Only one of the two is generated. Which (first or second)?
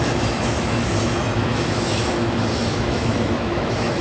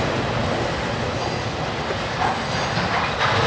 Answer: first